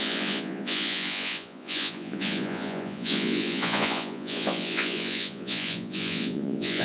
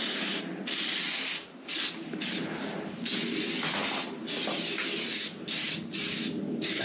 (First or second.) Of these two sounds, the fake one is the first